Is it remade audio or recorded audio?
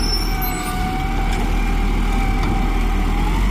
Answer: recorded